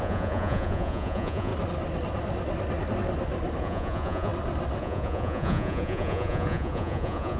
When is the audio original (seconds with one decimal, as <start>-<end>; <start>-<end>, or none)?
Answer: 1.5-3.6; 4.3-4.8